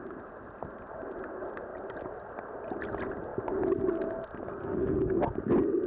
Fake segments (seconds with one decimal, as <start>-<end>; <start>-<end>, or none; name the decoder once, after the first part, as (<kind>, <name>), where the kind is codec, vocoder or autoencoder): 4.6-5.2 (codec, SNAC)